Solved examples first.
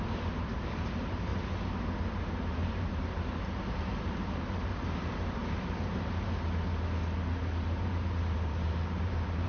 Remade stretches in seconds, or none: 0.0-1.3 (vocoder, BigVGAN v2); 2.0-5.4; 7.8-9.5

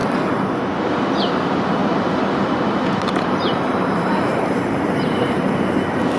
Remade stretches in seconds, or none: 1.8-5.5 (vocoder, BigVGAN v2)

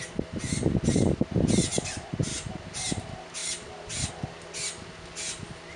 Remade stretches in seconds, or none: 3.4-4.1 (vocoder, BigVGAN v2)

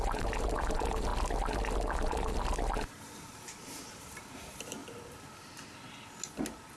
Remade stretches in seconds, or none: 0.0-1.1 (vocoder, BigVGAN v2); 2.9-4.8